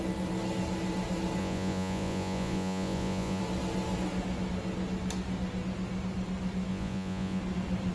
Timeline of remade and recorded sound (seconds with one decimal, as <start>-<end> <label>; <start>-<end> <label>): 0.0-1.4 recorded; 1.4-3.4 remade; 3.4-6.7 recorded; 6.7-7.4 remade; 7.4-7.9 recorded